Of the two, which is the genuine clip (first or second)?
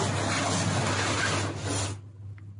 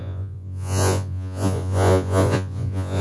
first